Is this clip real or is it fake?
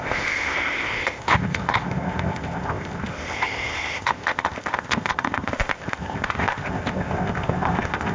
fake